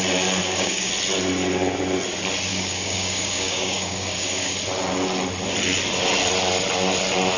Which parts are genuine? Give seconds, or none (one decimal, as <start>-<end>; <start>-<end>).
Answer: 0.0-0.4; 0.9-2.5; 4.5-7.4